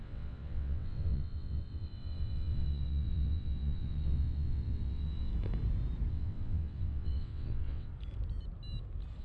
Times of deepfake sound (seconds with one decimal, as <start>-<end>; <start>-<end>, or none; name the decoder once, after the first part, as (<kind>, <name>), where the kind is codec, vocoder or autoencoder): 0.0-5.3 (vocoder, WaveNeXt); 6.1-7.9